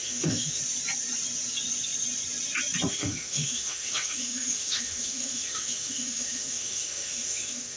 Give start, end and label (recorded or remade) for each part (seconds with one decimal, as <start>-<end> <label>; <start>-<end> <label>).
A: 0.0-0.6 remade; 0.6-2.9 recorded; 2.9-7.8 remade